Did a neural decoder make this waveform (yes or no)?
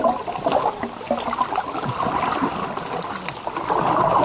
no